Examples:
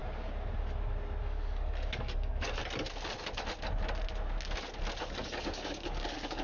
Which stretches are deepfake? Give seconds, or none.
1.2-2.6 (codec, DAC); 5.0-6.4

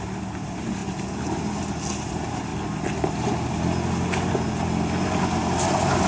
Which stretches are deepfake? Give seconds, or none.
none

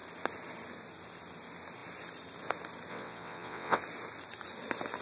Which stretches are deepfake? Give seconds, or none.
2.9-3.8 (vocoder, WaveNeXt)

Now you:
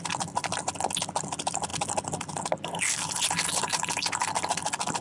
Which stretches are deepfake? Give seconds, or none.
none

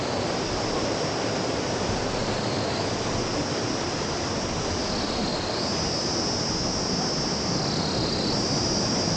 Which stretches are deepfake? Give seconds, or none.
none

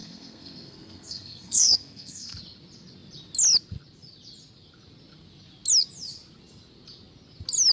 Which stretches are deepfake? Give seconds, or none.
0.0-2.4 (codec, SNAC)

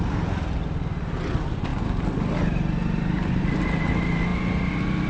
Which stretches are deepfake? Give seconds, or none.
none